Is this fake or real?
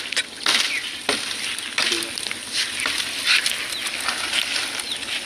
real